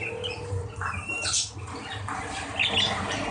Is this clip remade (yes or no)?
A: no